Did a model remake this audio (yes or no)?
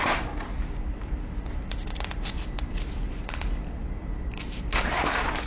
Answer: yes